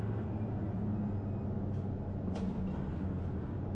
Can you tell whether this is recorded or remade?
recorded